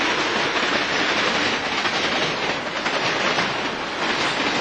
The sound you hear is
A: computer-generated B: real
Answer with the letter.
B